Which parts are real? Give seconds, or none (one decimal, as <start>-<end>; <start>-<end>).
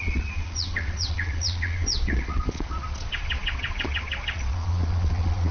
none